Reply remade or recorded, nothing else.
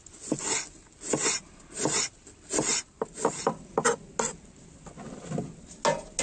recorded